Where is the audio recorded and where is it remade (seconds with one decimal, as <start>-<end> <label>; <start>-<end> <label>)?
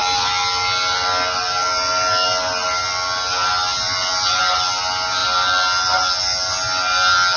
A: 0.0-7.4 recorded